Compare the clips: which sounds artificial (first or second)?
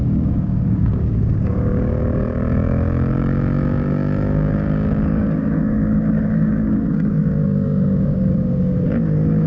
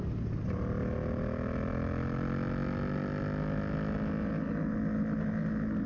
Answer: first